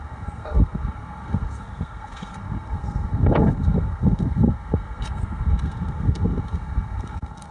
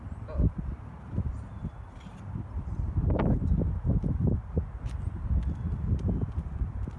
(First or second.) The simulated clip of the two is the first